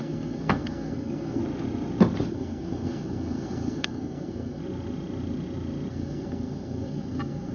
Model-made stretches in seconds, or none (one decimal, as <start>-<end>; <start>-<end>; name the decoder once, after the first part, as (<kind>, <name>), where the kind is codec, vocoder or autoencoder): 0.0-1.4 (codec, SNAC); 2.3-4.6; 5.9-7.5